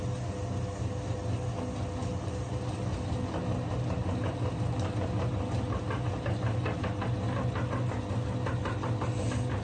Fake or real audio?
real